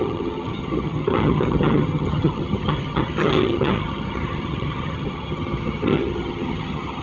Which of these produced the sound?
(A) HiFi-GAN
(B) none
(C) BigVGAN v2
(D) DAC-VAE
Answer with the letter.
A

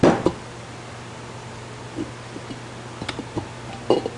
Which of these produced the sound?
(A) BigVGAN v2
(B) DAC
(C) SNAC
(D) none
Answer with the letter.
D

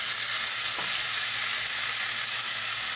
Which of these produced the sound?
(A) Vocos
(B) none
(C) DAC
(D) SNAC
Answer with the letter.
B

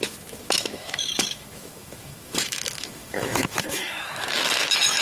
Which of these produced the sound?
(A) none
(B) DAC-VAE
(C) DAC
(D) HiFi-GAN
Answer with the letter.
B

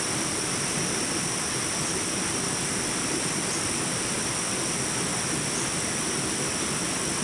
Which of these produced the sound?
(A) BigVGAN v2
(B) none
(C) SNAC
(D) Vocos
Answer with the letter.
B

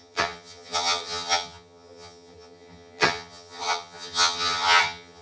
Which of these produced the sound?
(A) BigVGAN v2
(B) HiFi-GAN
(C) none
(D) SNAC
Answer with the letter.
B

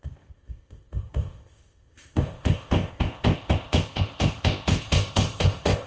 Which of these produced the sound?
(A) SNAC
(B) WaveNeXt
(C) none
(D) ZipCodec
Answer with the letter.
D